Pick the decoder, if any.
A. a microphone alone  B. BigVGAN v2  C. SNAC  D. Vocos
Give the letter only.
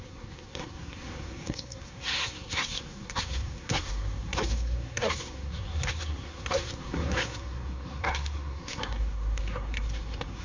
C